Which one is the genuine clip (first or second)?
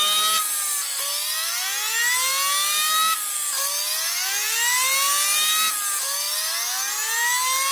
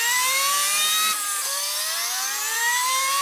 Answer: first